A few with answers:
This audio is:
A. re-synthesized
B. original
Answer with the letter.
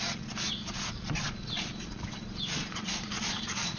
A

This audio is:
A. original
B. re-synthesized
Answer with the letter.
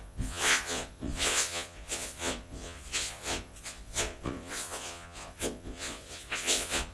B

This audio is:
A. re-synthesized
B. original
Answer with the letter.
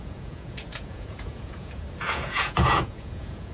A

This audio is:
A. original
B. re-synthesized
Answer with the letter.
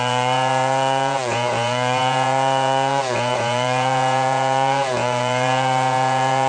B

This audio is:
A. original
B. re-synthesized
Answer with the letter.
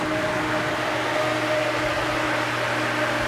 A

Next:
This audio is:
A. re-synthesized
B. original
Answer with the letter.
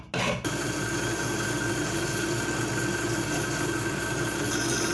B